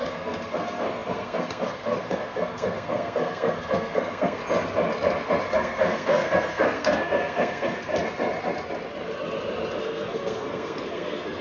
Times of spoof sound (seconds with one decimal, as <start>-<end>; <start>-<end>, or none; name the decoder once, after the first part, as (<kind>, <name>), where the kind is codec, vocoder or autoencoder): 0.0-4.4 (codec, SNAC); 5.4-7.9; 9.8-11.4